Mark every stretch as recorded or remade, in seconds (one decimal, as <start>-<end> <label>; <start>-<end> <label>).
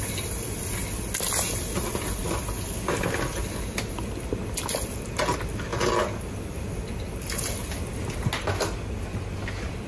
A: 0.0-9.9 recorded